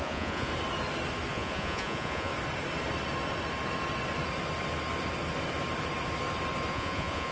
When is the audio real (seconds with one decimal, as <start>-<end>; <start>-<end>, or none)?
0.5-1.3; 2.3-6.7